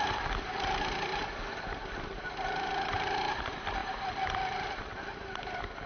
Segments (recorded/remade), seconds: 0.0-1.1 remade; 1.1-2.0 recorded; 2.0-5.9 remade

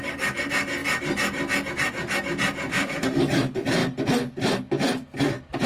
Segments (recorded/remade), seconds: 0.0-2.7 recorded; 2.7-3.2 remade; 3.2-5.7 recorded

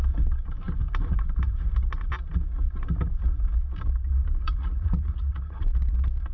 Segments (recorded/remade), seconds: 0.0-4.4 recorded; 4.4-5.6 remade; 5.6-6.3 recorded

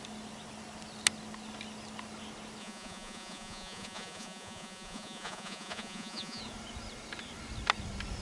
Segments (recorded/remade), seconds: 0.0-2.6 recorded; 2.6-6.4 remade; 6.4-8.2 recorded

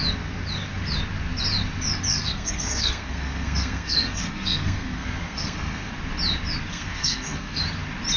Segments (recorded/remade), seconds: 0.0-2.1 recorded; 2.1-5.9 remade; 5.9-6.7 recorded; 6.7-7.6 remade; 7.6-8.2 recorded